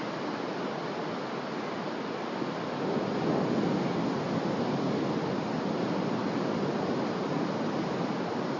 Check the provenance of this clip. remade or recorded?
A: recorded